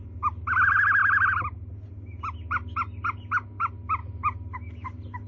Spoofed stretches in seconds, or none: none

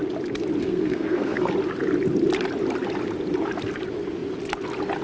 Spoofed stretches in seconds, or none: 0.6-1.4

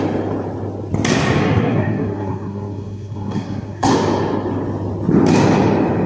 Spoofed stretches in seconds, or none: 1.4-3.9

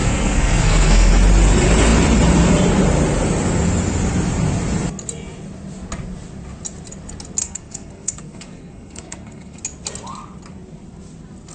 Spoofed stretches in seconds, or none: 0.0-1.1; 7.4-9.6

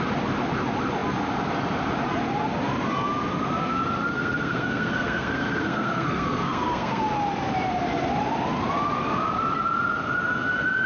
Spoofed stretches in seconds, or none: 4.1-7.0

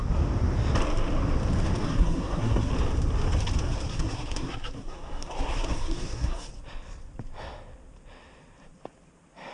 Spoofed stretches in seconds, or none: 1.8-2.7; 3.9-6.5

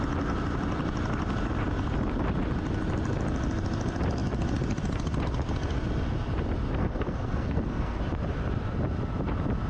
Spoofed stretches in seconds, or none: 6.8-8.0

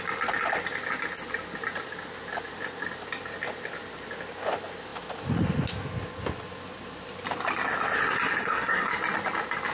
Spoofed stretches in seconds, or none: 8.4-8.9